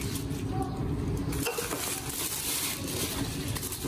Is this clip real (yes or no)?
yes